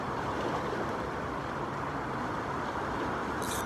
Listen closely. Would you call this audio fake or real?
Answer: fake